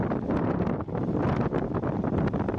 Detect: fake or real real